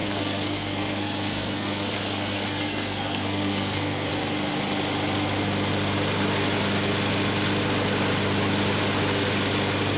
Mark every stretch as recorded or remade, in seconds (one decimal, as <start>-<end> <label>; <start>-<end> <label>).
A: 0.0-4.1 remade; 4.1-10.0 recorded